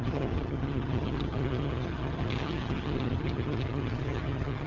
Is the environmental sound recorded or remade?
remade